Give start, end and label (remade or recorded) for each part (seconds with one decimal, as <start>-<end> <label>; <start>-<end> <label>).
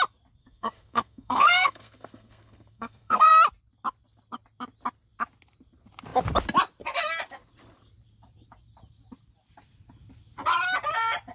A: 0.0-0.4 recorded; 0.4-3.3 remade; 3.3-11.3 recorded